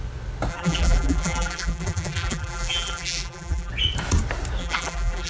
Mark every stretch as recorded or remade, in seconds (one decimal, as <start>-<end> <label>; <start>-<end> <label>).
0.0-0.5 recorded; 0.5-3.7 remade; 3.7-4.6 recorded; 4.6-5.3 remade